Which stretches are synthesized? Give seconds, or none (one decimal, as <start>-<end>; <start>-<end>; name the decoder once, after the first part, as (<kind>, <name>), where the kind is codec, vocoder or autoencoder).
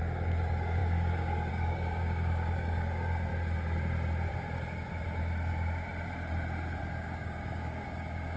0.0-3.3 (codec, DAC); 6.9-8.4